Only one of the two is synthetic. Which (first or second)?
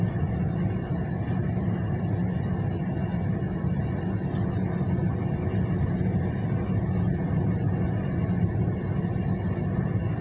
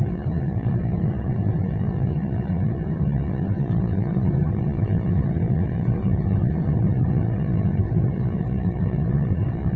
second